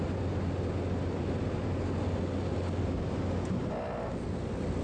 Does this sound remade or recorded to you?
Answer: recorded